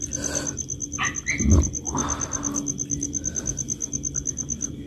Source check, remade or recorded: recorded